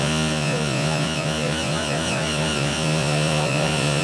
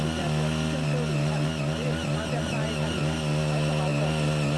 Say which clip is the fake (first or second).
first